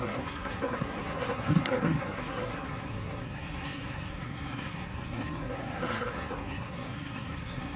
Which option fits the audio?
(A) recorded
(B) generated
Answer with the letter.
B